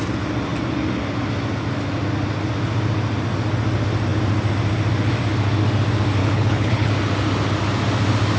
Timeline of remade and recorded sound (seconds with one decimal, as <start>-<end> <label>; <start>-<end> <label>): 0.0-6.2 recorded; 6.2-6.9 remade; 6.9-8.4 recorded